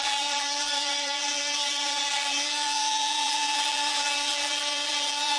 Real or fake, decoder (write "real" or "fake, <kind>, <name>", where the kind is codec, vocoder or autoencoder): fake, vocoder, BigVGAN v2